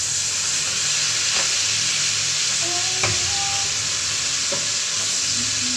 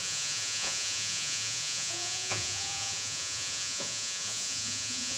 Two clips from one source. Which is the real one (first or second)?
first